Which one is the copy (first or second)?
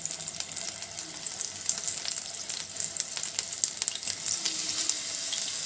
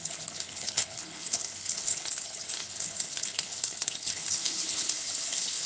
second